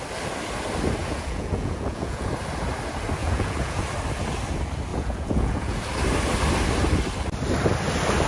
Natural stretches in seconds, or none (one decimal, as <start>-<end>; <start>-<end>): 0.0-1.0; 2.3-3.2; 3.8-4.9; 5.8-8.3